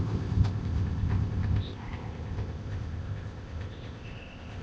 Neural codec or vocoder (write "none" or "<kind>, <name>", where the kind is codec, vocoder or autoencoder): codec, ZipCodec